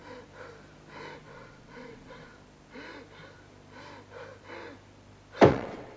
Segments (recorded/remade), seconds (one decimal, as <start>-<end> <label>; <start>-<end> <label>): 0.0-1.2 recorded; 1.2-2.3 remade; 2.3-5.5 recorded; 5.5-6.0 remade